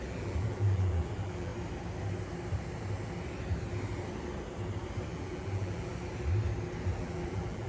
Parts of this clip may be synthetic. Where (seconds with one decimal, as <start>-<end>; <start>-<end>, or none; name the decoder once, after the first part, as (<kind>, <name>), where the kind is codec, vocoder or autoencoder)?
0.0-1.5 (vocoder, BigVGAN v2); 5.1-5.9; 7.0-7.7